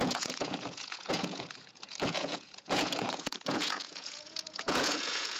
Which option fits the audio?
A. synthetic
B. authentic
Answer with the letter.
A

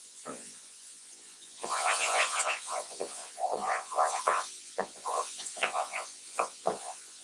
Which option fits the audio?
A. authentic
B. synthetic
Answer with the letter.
B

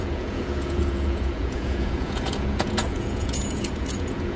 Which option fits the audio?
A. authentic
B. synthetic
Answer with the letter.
B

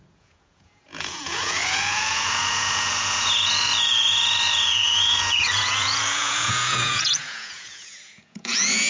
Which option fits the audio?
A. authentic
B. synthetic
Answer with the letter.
B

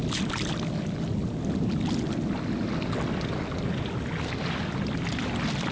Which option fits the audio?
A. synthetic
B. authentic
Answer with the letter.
B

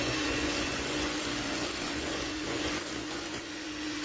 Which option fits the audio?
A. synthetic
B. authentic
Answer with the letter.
A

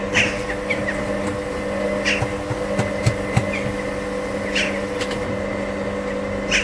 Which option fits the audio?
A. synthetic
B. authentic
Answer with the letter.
B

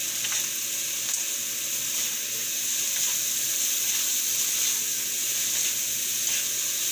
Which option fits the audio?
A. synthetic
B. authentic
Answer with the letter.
B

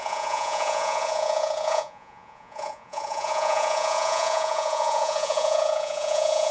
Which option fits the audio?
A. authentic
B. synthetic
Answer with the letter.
B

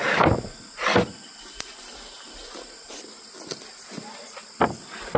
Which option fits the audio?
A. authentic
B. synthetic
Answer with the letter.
A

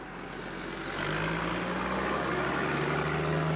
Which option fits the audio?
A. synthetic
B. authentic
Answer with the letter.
B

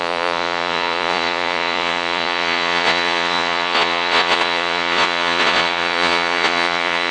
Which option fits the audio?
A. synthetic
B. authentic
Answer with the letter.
A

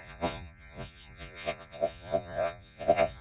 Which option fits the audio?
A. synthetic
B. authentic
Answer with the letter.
A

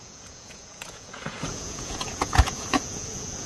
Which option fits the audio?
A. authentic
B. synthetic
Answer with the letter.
B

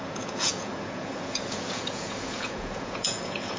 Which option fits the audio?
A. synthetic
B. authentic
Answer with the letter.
A